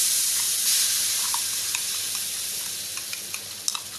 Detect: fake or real real